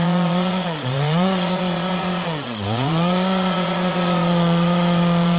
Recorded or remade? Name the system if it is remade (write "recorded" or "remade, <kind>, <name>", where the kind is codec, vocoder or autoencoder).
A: remade, vocoder, Vocos